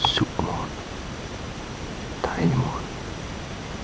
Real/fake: fake